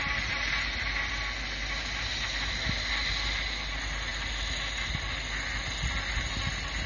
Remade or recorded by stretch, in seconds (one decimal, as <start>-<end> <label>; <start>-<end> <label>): 0.0-6.9 recorded